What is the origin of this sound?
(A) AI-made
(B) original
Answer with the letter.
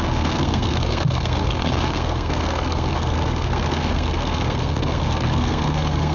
A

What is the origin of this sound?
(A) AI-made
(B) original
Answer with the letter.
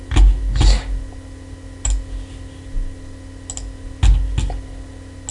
B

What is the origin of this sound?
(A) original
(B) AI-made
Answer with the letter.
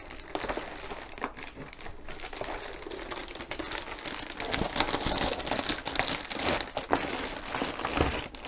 A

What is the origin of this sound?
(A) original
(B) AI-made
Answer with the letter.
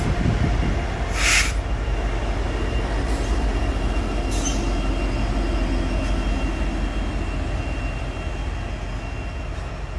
A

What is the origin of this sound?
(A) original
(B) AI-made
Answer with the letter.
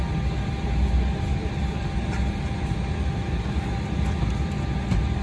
A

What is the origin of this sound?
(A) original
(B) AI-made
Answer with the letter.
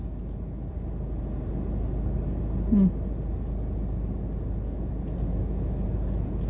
A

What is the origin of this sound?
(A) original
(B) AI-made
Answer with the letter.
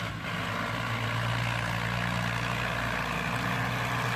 A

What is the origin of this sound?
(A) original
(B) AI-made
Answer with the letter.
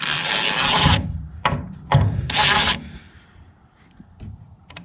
A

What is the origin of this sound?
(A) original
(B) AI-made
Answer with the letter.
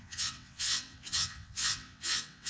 B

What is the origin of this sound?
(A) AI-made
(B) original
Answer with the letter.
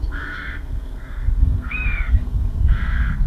A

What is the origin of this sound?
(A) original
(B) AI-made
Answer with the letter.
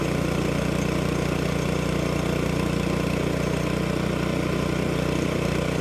A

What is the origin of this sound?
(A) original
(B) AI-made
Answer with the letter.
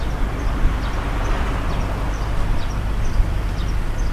B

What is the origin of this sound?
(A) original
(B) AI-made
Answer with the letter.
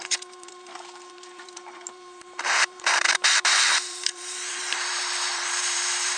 B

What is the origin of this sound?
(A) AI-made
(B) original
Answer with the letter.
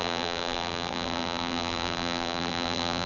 A